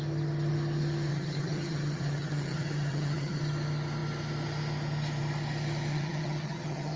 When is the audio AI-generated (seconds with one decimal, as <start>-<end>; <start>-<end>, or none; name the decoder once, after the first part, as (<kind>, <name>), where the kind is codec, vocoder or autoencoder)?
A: 1.1-3.4 (vocoder, HiFi-GAN); 5.9-7.0